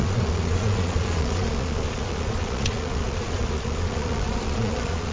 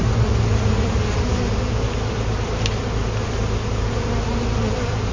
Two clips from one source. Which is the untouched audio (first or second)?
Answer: second